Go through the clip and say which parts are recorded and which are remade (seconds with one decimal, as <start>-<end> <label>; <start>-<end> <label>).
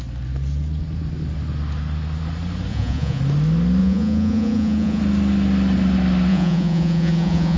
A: 0.0-2.7 recorded; 2.7-3.2 remade; 3.2-3.8 recorded; 3.8-5.0 remade; 5.0-6.3 recorded; 6.3-7.6 remade